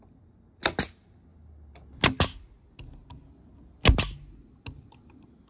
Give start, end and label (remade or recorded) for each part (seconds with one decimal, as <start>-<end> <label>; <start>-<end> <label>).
0.0-5.5 recorded